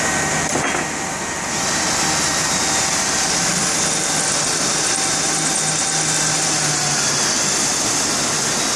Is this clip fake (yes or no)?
no